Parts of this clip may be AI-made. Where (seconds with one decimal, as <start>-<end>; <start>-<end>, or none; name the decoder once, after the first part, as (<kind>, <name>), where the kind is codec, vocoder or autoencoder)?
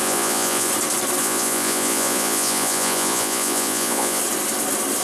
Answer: 0.0-0.7 (vocoder, Vocos); 1.2-4.2